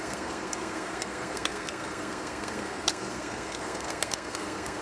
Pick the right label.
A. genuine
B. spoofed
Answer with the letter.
B